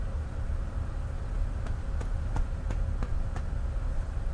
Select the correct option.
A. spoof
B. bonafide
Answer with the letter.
B